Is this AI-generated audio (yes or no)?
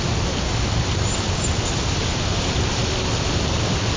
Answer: no